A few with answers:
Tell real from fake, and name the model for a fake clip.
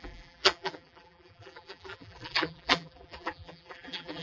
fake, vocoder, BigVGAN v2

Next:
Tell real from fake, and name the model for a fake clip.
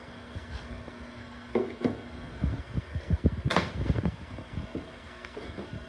fake, codec, SNAC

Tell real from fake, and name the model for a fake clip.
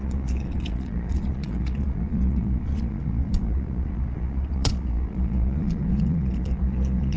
fake, vocoder, Vocos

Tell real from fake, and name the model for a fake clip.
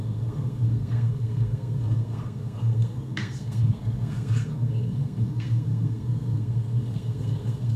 fake, codec, SNAC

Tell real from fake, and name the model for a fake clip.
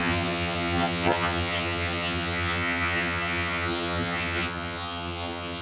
fake, vocoder, HiFi-GAN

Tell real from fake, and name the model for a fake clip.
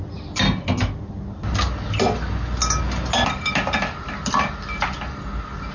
real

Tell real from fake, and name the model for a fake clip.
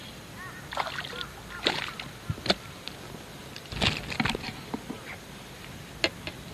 real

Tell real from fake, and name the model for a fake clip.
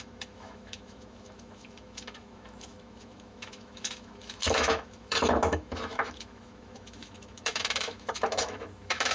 fake, autoencoder, DAC-VAE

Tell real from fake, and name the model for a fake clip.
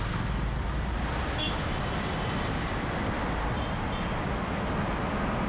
real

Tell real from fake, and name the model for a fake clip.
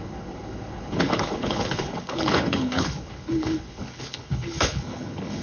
fake, codec, HILCodec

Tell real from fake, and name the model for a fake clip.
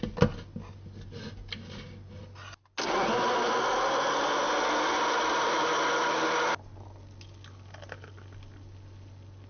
real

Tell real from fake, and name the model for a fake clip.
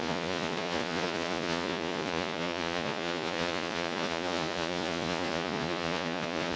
fake, vocoder, Vocos